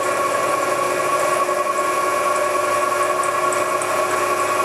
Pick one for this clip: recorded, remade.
recorded